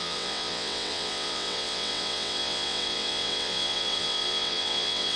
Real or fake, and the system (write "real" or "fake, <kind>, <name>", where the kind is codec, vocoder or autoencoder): fake, vocoder, WaveNeXt